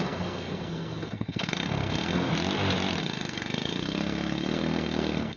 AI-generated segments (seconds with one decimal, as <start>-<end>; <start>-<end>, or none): 0.0-2.3; 3.0-5.4